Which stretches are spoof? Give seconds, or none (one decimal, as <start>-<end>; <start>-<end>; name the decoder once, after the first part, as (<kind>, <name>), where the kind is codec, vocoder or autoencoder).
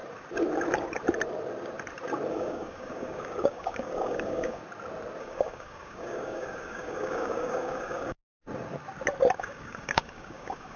2.3-4.6 (codec, DAC); 5.2-8.2; 9.4-10.8